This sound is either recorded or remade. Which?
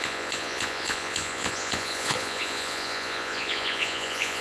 remade